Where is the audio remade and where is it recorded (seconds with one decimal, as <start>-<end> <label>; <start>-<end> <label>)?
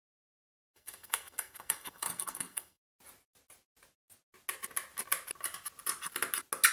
0.0-0.4 recorded; 0.4-2.8 remade; 2.8-6.7 recorded